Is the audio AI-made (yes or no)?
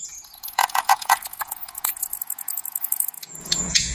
yes